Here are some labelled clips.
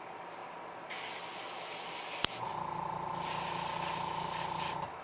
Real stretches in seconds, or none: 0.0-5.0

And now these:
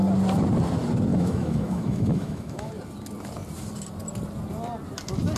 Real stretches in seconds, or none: 0.0-1.1; 2.7-5.4

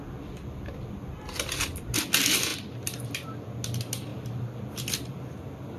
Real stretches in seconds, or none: 0.0-5.8

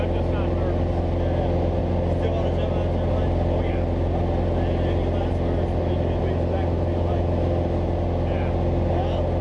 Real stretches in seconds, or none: 0.0-9.4

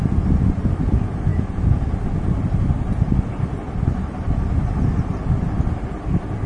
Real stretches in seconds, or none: 0.0-6.5

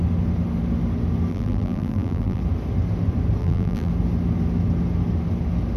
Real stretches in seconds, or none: 0.0-1.3; 2.4-3.4; 3.9-5.8

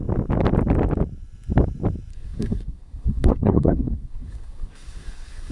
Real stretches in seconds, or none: 0.0-2.1